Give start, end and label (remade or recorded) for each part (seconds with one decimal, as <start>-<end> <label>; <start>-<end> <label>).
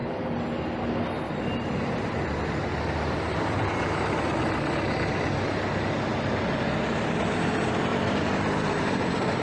0.0-7.9 recorded; 7.9-8.8 remade; 8.8-9.4 recorded